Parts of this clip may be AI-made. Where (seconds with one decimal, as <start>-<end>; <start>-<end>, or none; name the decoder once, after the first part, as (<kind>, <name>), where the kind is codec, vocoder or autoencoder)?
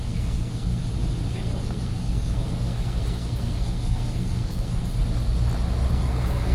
0.0-0.8 (codec, SNAC); 1.3-5.0; 5.9-6.5